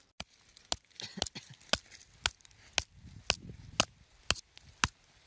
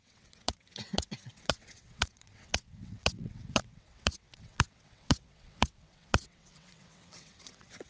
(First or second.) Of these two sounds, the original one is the first